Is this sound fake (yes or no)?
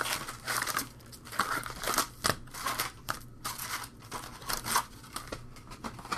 no